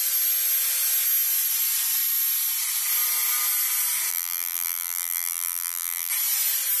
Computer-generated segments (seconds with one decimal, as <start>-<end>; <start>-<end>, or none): 4.1-6.1